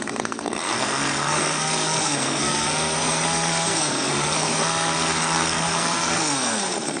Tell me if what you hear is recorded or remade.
remade